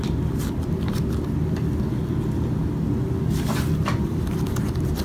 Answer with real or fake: real